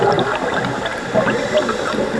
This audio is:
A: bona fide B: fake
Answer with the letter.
A